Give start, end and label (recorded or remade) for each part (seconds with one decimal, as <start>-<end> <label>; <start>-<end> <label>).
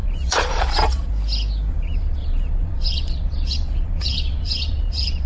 0.0-1.1 remade; 1.1-1.7 recorded; 1.7-5.3 remade